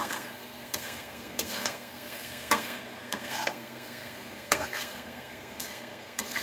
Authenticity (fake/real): fake